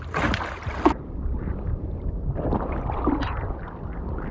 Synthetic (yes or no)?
no